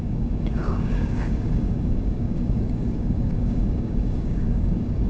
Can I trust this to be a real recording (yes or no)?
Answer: no